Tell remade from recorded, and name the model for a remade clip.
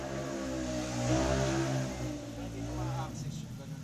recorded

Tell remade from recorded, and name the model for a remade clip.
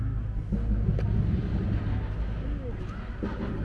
recorded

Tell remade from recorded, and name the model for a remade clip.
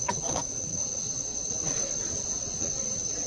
remade, vocoder, Vocos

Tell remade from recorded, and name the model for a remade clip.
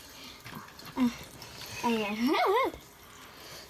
recorded